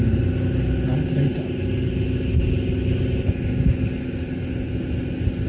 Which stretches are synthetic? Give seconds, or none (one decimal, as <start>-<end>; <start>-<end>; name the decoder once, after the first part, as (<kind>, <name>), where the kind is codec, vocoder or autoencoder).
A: none